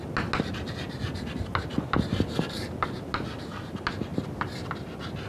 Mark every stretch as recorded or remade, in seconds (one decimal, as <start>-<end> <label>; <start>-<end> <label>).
0.0-5.3 recorded